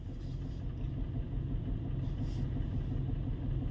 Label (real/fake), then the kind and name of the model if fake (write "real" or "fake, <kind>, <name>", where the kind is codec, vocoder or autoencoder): real